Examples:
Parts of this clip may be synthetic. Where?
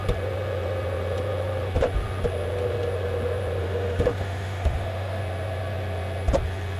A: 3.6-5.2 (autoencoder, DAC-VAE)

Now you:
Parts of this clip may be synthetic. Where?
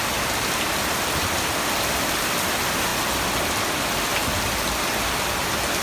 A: none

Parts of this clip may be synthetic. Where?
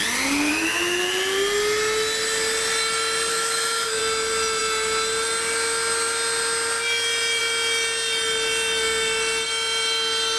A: 0.5-1.0 (autoencoder, DAC-VAE); 3.3-4.0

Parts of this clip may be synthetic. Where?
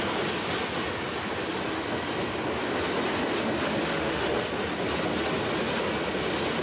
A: 3.9-4.5 (autoencoder, DAC-VAE)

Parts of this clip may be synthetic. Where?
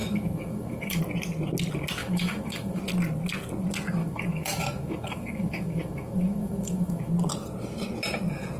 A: 0.0-1.0 (autoencoder, DAC-VAE); 2.0-2.8; 4.0-7.1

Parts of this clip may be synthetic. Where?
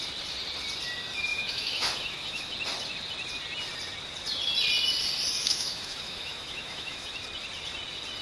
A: 1.3-2.5 (autoencoder, DAC-VAE); 5.4-7.1